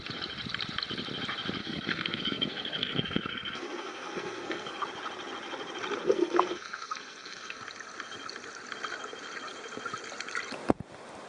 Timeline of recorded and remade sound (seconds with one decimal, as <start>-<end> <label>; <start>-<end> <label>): 0.0-1.6 recorded; 1.6-4.8 remade; 4.8-6.0 recorded; 6.0-7.6 remade; 7.6-11.3 recorded